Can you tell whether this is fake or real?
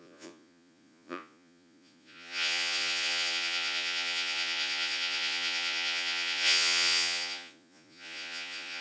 fake